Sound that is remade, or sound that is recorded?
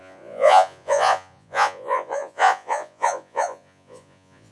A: remade